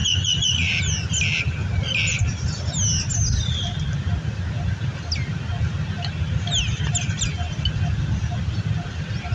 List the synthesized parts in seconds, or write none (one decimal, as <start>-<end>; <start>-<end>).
0.0-0.7